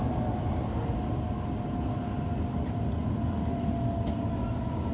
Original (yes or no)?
yes